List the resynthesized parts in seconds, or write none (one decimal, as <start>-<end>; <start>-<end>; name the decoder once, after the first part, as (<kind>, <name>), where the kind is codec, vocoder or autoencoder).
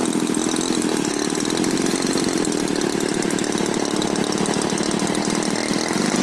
none